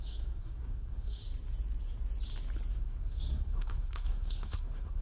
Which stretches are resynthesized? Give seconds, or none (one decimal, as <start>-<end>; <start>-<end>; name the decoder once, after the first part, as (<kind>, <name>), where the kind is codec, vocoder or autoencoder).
0.0-1.2 (codec, SNAC); 2.7-5.0